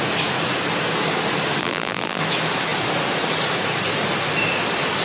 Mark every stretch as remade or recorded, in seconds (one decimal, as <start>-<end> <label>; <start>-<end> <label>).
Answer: 0.0-1.6 recorded; 1.6-2.2 remade; 2.2-5.0 recorded